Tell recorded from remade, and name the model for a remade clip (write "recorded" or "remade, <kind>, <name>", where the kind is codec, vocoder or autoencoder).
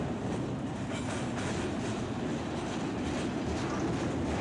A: recorded